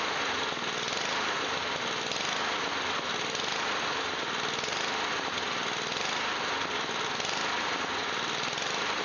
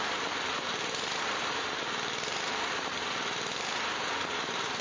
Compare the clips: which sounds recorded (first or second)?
first